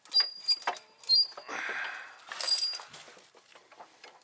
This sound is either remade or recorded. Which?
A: recorded